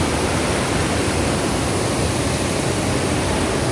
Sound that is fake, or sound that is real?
fake